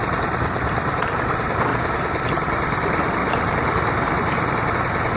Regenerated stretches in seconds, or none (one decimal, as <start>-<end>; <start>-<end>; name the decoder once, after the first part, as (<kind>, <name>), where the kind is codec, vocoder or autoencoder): 3.2-4.7 (vocoder, BigVGAN v2)